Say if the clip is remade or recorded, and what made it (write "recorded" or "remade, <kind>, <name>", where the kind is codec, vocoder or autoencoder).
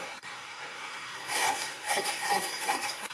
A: remade, codec, SNAC